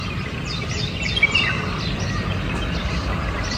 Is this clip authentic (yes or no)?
yes